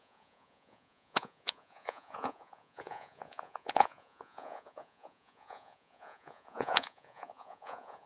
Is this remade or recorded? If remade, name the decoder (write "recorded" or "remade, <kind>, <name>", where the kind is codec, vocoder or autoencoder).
remade, vocoder, Vocos